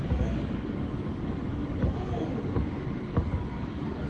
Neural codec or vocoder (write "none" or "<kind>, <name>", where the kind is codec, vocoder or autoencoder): codec, DAC